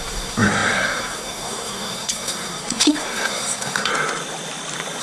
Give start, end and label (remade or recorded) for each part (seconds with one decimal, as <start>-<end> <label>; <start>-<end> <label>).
0.0-3.9 remade; 3.9-5.0 recorded

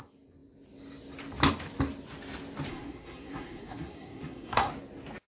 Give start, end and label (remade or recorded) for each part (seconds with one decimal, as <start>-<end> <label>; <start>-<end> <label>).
0.0-2.7 recorded; 2.7-4.7 remade; 4.7-5.3 recorded

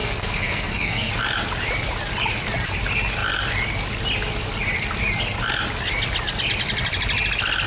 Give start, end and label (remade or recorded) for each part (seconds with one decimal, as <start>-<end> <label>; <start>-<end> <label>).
0.0-1.1 remade; 1.1-7.7 recorded